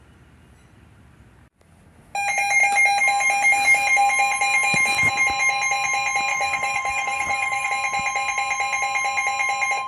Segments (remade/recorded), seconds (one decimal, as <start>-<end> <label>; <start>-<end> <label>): 0.0-6.3 recorded; 6.3-7.7 remade; 7.7-9.9 recorded